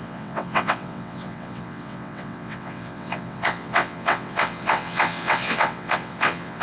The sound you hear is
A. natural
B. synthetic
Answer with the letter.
B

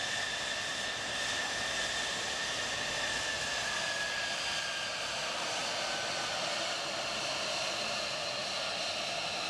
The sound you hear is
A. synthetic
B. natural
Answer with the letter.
B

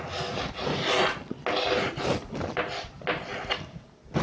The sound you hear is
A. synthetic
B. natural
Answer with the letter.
B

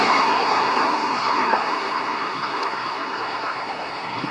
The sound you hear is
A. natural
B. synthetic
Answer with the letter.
B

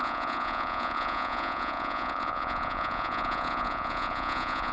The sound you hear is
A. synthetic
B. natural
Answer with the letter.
A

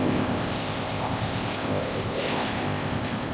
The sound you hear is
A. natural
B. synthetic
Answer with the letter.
B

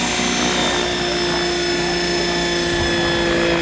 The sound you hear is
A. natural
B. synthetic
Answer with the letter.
A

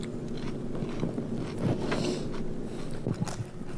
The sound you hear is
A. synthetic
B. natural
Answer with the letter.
B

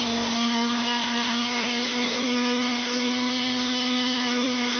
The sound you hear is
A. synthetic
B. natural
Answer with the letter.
A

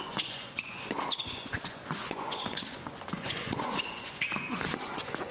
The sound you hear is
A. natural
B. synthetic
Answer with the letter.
B